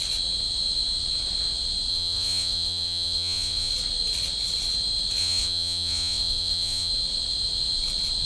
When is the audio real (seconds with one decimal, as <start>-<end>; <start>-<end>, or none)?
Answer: 0.0-1.9; 3.7-5.2; 6.9-8.2

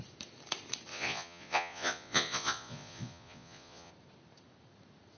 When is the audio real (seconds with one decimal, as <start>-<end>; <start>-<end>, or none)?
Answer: 0.0-0.9; 3.9-5.2

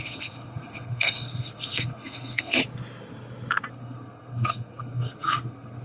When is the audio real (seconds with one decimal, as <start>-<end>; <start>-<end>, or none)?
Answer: 2.6-3.7

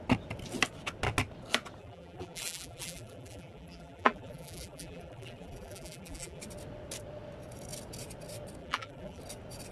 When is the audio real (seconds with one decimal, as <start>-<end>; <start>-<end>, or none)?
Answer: 0.0-1.8; 6.4-8.6; 9.2-9.7

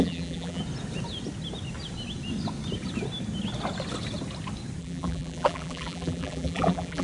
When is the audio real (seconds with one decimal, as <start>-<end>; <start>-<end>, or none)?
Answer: 0.6-4.8